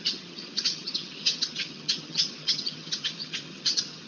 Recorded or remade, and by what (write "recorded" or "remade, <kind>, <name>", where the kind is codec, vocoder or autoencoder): remade, vocoder, HiFi-GAN